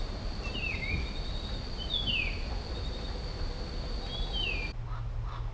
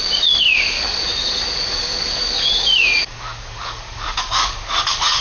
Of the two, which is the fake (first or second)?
second